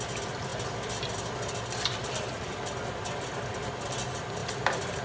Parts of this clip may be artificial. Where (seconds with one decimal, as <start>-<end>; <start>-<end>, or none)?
none